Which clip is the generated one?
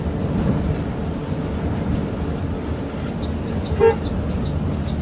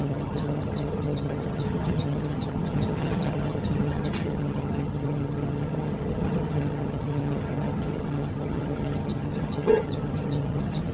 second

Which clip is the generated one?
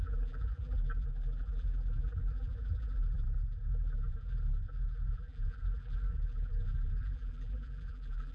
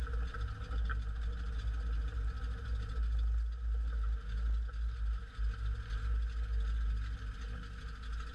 first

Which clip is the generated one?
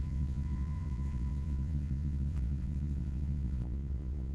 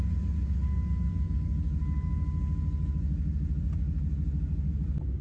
first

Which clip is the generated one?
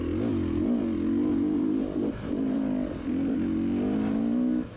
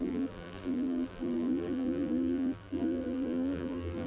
second